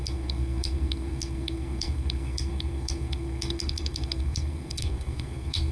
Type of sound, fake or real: fake